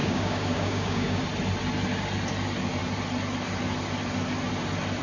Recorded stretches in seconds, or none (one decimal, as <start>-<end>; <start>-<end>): 1.2-5.0